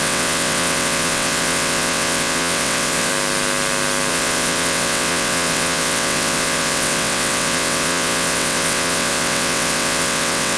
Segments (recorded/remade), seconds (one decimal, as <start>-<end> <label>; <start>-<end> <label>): 0.0-3.1 remade; 3.1-4.1 recorded; 4.1-10.6 remade